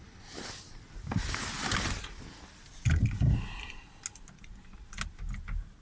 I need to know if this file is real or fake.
real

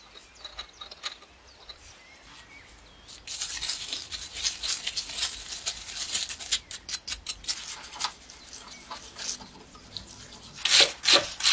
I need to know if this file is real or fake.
real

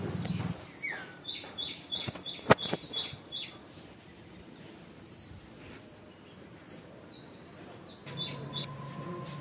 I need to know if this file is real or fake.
real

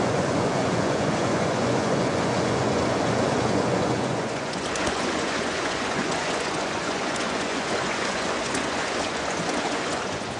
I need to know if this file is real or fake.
fake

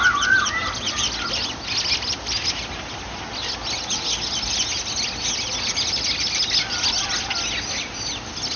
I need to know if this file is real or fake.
real